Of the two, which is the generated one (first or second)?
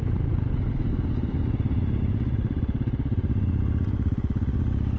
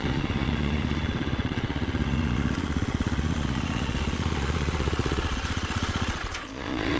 second